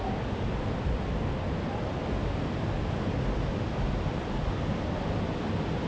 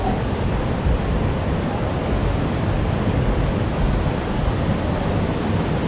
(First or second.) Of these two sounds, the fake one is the second